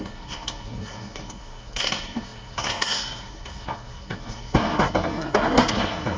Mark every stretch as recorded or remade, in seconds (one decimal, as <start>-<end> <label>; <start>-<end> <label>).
0.0-6.2 remade